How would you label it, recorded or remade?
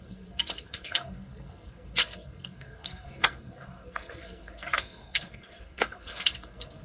remade